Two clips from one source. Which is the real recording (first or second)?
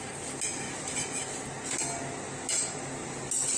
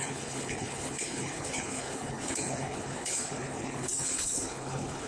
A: first